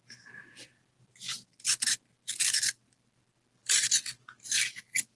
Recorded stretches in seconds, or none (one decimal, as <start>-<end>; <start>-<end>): 0.0-5.2